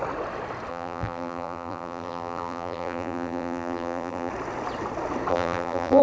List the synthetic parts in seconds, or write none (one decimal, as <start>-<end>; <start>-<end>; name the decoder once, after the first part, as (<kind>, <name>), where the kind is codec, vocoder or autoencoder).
0.7-4.3 (vocoder, BigVGAN v2); 5.3-6.0